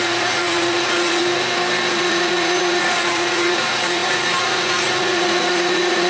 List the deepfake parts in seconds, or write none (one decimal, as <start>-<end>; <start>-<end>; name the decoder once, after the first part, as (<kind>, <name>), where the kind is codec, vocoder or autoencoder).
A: 0.0-1.2 (vocoder, Vocos); 1.9-6.1